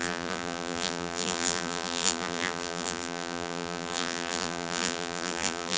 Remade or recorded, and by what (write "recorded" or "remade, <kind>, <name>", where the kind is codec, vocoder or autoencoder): remade, vocoder, BigVGAN v2